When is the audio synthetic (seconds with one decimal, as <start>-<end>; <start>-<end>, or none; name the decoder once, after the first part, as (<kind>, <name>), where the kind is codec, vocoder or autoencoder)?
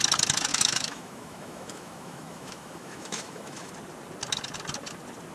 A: 0.5-3.7 (autoencoder, DAC-VAE)